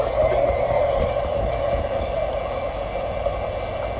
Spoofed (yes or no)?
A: no